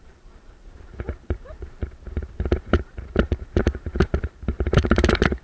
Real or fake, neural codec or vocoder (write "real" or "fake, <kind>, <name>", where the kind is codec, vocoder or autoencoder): fake, vocoder, BigVGAN v2